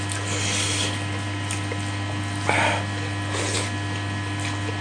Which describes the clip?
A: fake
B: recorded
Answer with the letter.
B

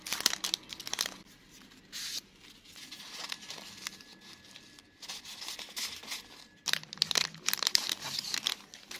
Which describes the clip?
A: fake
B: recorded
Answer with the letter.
B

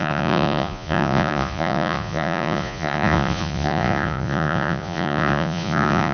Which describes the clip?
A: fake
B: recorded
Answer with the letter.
A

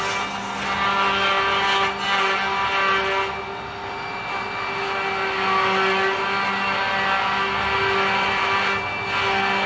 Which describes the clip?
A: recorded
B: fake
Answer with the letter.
A